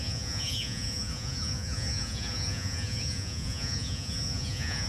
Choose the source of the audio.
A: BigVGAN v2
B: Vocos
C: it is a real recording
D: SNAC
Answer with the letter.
B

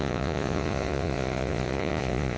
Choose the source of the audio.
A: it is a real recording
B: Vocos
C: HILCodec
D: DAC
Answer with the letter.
B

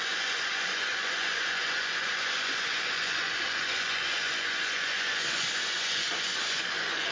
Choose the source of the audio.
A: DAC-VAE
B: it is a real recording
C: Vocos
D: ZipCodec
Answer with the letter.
C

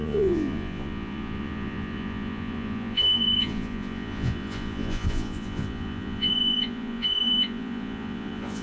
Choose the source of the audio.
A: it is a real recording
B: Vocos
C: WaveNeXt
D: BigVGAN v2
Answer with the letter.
B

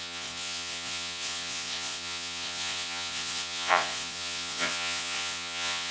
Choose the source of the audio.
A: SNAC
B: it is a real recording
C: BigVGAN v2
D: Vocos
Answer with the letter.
D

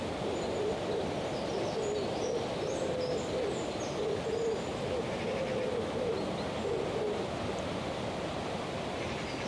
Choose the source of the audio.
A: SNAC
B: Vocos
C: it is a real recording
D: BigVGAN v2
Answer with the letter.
C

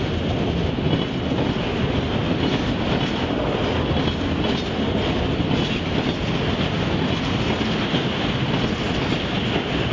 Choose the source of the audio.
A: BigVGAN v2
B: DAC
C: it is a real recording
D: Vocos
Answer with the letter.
C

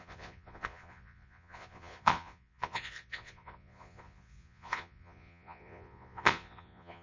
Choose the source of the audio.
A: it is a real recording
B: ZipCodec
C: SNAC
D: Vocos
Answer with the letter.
D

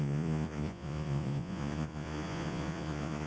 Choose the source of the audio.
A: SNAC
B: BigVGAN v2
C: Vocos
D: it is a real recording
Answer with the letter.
C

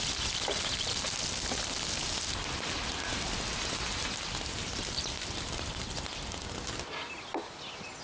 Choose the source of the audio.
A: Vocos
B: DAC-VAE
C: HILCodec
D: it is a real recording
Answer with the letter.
D